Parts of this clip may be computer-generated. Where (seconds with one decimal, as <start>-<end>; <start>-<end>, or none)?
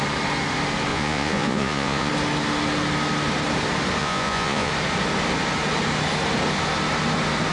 0.9-2.1; 4.0-4.7